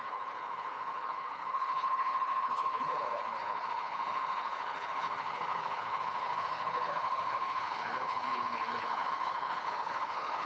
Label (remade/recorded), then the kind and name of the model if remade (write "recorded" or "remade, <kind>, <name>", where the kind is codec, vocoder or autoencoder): remade, codec, HILCodec